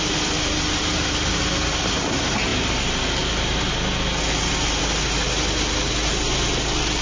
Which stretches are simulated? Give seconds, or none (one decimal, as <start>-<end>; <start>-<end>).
none